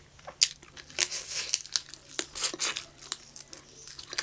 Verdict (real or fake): real